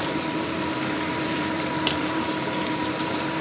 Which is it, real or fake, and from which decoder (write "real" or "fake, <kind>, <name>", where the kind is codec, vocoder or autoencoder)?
fake, vocoder, BigVGAN v2